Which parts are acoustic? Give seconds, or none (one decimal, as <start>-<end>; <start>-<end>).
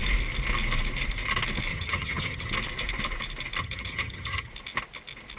0.0-1.7; 2.5-3.6; 4.5-5.4